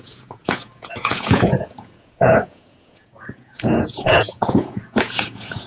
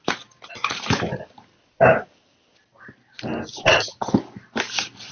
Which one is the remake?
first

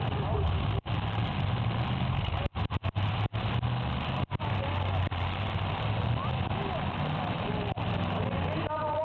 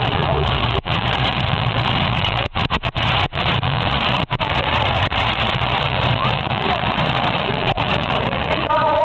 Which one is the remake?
second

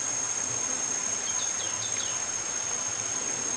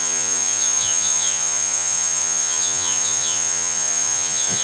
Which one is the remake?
second